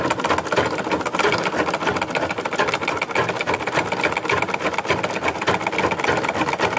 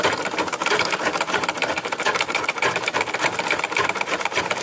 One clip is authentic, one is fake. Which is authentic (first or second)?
first